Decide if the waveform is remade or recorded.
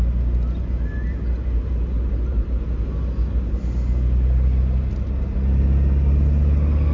recorded